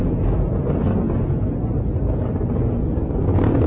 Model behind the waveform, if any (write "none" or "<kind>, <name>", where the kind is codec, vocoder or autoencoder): none